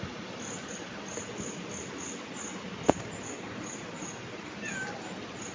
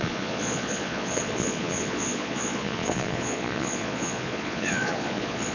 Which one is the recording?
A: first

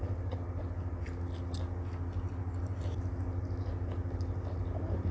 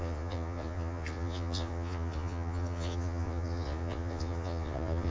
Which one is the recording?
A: first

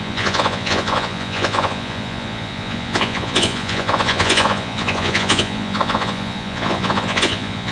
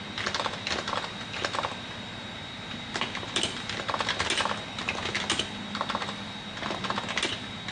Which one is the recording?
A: second